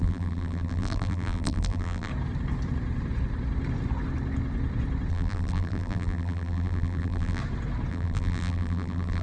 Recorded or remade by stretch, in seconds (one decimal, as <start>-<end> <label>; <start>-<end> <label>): 0.0-2.1 remade; 2.1-5.1 recorded; 5.1-7.4 remade; 7.4-7.9 recorded; 7.9-9.2 remade